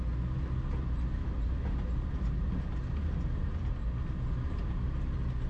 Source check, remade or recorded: recorded